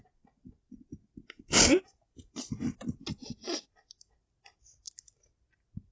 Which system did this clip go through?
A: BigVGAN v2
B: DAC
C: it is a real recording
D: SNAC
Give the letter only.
C